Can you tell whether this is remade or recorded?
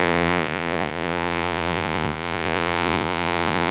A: remade